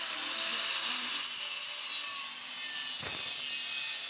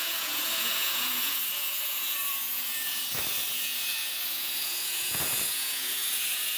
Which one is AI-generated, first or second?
second